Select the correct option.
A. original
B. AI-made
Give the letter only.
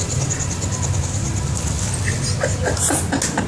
A